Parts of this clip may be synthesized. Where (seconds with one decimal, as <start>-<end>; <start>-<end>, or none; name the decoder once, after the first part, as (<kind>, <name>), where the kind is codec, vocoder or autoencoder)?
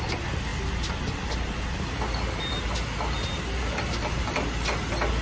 none